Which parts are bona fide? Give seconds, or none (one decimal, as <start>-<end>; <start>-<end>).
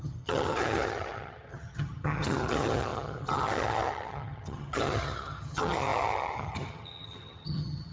none